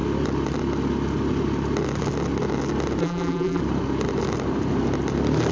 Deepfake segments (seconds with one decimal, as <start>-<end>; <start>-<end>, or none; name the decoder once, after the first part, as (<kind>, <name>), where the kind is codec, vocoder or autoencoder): 3.0-3.6 (vocoder, BigVGAN v2)